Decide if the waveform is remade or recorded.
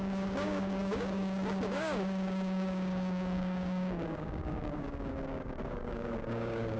remade